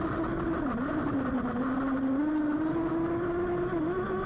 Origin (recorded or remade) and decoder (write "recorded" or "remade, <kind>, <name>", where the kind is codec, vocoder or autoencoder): recorded